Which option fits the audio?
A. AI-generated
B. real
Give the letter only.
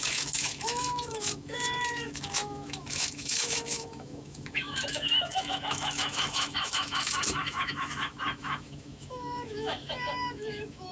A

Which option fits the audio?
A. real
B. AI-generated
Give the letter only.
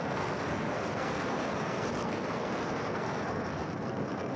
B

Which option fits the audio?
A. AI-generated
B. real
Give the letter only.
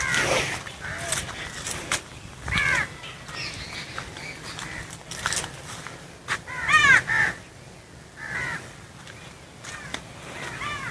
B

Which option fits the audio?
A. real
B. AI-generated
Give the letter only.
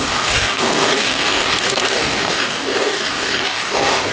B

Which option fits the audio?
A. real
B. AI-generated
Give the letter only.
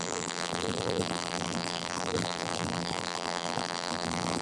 B